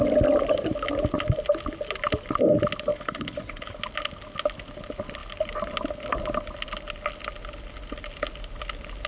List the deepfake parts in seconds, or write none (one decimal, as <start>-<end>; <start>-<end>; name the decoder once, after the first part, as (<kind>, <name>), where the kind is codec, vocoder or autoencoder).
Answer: 2.9-3.8 (codec, HILCodec)

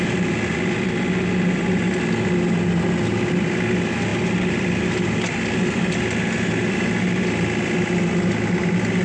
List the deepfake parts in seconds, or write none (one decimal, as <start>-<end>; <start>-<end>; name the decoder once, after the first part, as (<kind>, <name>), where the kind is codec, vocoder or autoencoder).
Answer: none

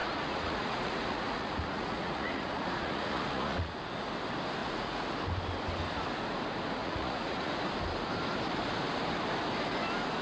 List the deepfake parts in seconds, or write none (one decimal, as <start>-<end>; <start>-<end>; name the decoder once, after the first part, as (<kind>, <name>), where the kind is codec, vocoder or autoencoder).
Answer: 0.0-3.8 (vocoder, Vocos); 4.6-5.1; 6.8-7.5

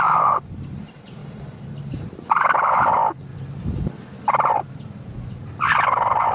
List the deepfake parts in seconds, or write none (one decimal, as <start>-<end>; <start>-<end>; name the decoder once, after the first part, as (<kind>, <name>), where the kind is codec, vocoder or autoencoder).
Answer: 0.0-1.2 (vocoder, BigVGAN v2); 1.9-6.3

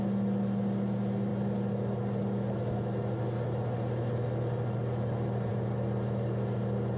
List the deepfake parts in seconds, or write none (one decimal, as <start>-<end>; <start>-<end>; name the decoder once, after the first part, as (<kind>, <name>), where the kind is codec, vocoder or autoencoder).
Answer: none

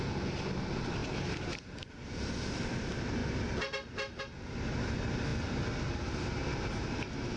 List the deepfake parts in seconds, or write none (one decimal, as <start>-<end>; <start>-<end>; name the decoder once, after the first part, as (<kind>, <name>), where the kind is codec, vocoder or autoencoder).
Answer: 1.0-1.9 (vocoder, BigVGAN v2); 3.2-4.2